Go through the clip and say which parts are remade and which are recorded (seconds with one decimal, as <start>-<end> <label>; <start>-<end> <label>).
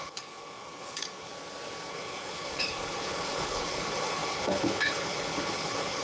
0.0-1.3 remade; 1.3-1.9 recorded; 1.9-6.0 remade